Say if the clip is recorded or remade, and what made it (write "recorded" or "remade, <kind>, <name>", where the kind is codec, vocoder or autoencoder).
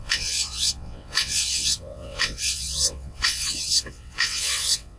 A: remade, vocoder, WaveNeXt